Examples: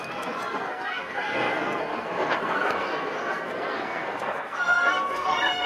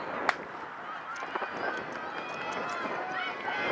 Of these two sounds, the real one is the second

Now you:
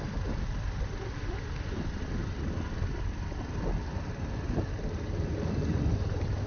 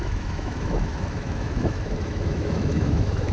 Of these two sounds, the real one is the first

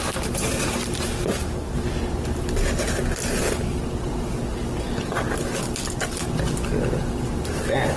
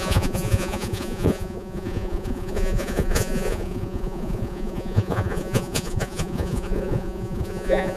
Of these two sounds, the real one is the first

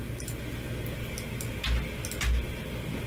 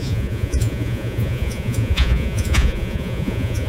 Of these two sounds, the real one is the first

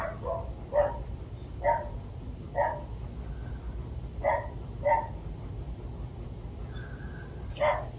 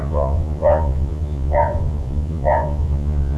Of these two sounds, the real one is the first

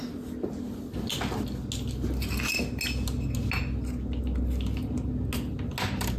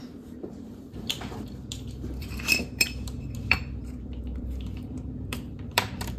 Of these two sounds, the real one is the first